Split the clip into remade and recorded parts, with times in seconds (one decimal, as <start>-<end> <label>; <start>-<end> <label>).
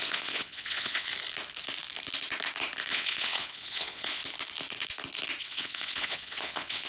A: 0.0-1.1 remade; 1.1-2.9 recorded; 2.9-4.2 remade; 4.2-5.4 recorded; 5.4-6.9 remade